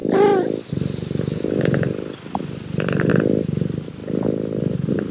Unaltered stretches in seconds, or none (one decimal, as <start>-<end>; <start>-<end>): 0.0-5.1